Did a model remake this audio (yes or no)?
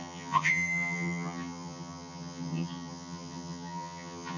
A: yes